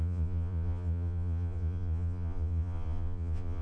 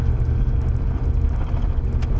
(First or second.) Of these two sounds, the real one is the second